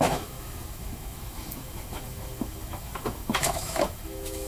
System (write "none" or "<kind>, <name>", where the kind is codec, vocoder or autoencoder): autoencoder, DAC-VAE